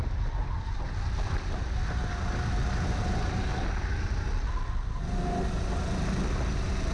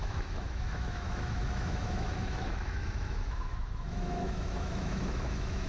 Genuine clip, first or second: first